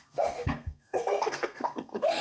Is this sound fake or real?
fake